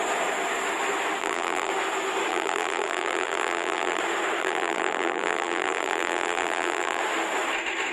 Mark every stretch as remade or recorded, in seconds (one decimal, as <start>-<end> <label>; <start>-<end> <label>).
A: 0.0-1.2 recorded; 1.2-1.7 remade; 1.7-2.3 recorded; 2.3-4.0 remade; 4.0-4.4 recorded; 4.4-7.0 remade; 7.0-7.9 recorded